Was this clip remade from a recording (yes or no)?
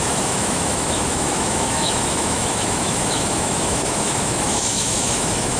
yes